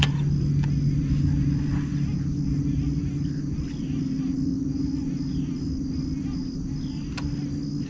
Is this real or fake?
real